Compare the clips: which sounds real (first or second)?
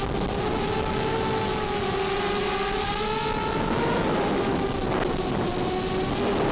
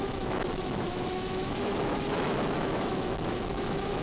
first